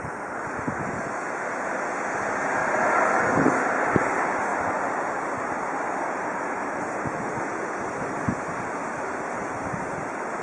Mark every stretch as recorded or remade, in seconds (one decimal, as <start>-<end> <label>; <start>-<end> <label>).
0.0-2.6 recorded; 2.6-3.2 remade; 3.2-10.4 recorded